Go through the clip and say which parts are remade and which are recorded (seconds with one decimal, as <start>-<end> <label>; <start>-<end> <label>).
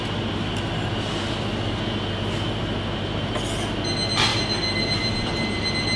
0.0-6.0 recorded